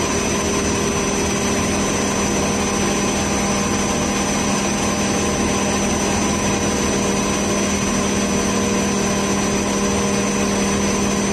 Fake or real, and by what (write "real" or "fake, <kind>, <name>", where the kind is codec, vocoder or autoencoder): real